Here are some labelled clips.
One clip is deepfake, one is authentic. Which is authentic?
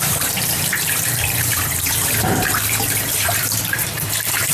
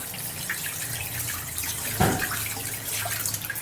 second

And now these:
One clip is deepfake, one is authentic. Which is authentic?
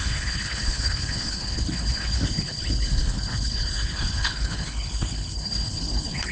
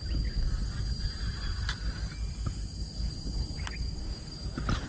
second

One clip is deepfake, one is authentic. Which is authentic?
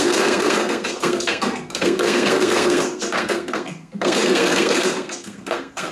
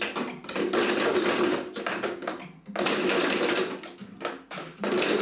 second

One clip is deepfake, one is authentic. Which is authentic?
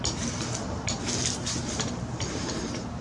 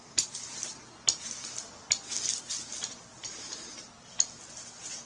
second